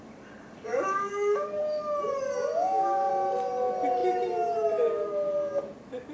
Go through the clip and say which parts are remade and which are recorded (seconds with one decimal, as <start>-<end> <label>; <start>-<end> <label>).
0.0-0.7 recorded; 0.7-1.6 remade; 1.6-2.5 recorded; 2.5-3.1 remade; 3.1-6.1 recorded